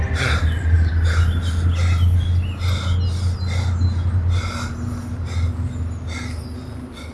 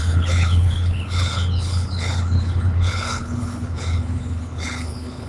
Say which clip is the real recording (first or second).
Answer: first